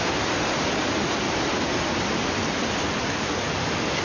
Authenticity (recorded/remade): recorded